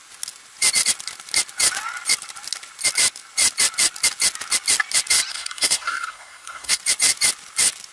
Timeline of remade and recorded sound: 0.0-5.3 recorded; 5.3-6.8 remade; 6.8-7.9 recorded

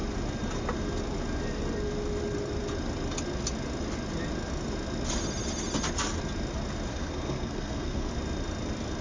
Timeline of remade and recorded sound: 0.0-6.9 recorded; 6.9-8.1 remade; 8.1-9.0 recorded